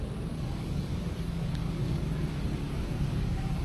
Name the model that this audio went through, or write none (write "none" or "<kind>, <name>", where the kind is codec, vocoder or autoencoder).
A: codec, DAC